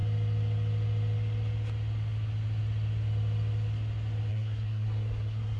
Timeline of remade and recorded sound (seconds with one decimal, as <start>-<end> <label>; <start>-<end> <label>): 0.0-4.3 recorded; 4.3-5.6 remade